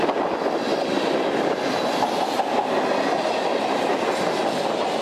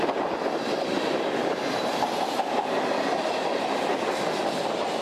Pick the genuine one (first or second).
first